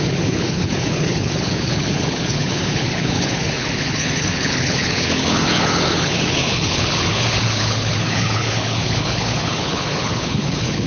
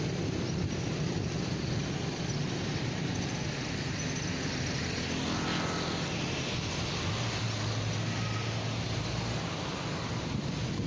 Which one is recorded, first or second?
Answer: second